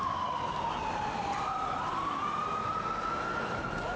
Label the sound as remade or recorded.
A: remade